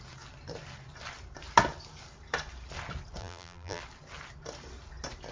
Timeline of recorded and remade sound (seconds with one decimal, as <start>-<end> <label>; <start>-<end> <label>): 0.0-3.2 recorded; 3.2-3.8 remade; 3.8-5.3 recorded